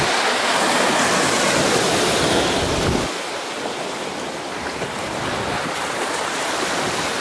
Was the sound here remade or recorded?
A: recorded